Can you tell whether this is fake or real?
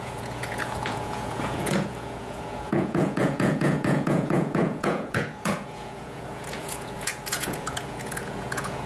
fake